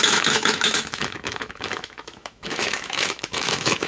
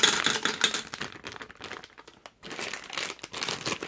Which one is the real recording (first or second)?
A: second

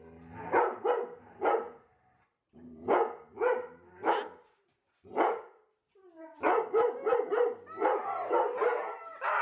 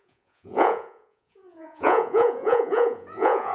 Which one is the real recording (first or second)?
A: first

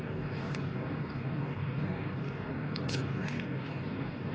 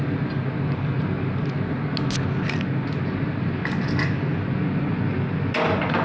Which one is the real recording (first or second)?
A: second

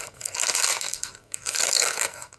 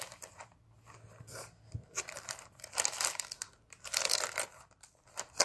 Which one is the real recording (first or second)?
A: second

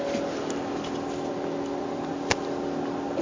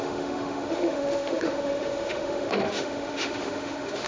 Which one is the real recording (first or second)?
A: first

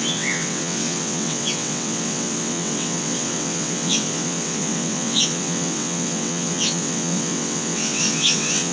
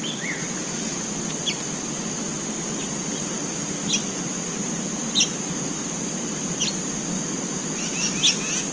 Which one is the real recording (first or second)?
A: second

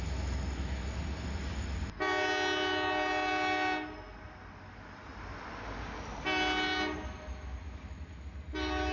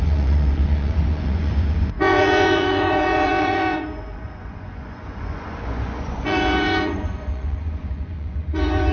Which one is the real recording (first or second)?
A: first